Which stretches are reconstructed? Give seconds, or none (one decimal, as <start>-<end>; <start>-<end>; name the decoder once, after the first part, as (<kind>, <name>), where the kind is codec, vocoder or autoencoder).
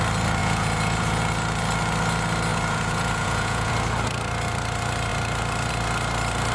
0.4-1.2 (vocoder, Vocos); 2.5-3.7